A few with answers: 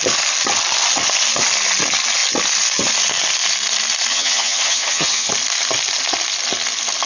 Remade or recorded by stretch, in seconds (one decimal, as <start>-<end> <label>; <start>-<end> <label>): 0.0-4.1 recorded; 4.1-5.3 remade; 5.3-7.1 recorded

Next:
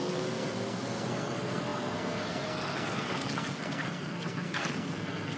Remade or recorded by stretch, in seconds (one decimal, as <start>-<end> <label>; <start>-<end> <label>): 0.0-5.4 remade

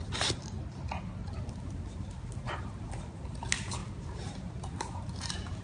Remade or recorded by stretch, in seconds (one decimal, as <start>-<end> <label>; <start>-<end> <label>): 0.0-1.2 recorded; 1.2-2.9 remade; 2.9-3.8 recorded; 3.8-5.6 remade

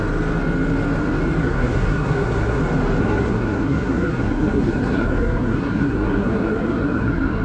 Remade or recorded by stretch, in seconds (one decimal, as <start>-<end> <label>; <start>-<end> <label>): 0.0-1.4 recorded; 1.4-2.6 remade; 2.6-3.0 recorded; 3.0-7.4 remade

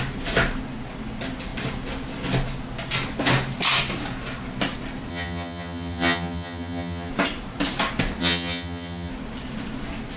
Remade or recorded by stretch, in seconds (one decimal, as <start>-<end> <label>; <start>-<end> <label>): 0.0-5.1 recorded; 5.1-7.1 remade; 7.1-8.2 recorded; 8.2-9.1 remade; 9.1-10.2 recorded

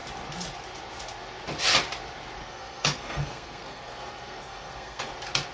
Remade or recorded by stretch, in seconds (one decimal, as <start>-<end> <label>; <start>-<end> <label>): 0.0-2.4 recorded; 2.4-5.1 remade; 5.1-5.5 recorded

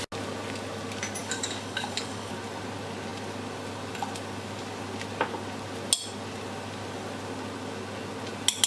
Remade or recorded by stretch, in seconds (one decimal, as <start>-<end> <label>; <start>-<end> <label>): 0.0-1.2 recorded; 1.2-2.3 remade; 2.3-8.7 recorded

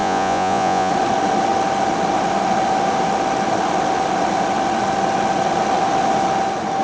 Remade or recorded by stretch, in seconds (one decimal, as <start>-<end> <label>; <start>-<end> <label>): 0.0-0.9 remade; 0.9-6.8 recorded